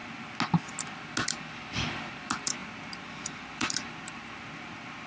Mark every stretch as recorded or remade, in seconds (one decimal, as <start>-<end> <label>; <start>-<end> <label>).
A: 0.0-2.6 recorded; 2.6-5.1 remade